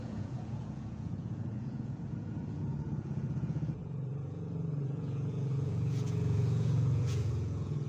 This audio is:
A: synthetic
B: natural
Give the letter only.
A